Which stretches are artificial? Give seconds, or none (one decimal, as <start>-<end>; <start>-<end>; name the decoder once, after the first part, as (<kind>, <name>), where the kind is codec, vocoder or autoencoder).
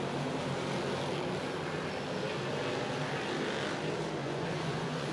4.2-5.1 (vocoder, Vocos)